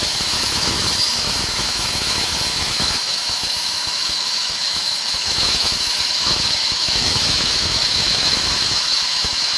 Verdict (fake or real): fake